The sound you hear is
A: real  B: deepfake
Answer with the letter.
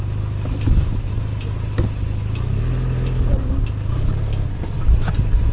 A